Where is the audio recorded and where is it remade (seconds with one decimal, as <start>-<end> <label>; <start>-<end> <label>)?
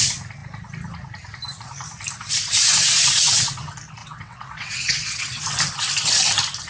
0.0-4.0 recorded; 4.0-5.4 remade; 5.4-6.7 recorded